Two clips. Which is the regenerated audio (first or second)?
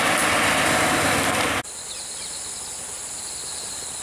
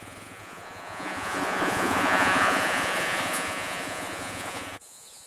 second